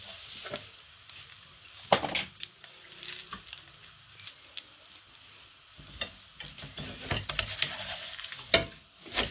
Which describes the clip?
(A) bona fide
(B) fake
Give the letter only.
A